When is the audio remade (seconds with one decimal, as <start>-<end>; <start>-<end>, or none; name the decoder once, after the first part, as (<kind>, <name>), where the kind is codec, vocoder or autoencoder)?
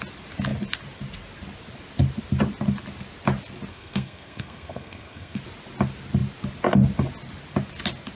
3.7-5.4 (codec, SNAC)